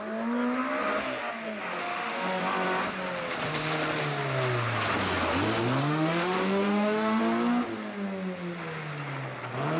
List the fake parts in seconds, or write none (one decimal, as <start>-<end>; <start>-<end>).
1.8-2.4; 5.8-7.2